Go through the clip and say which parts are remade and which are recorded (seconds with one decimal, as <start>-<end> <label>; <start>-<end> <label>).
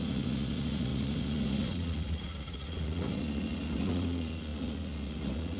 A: 0.0-5.6 remade